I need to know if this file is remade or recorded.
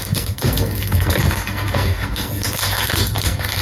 remade